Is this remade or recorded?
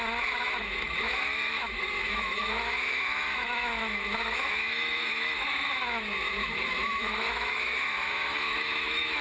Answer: remade